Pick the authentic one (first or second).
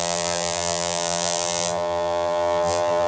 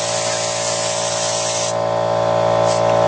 second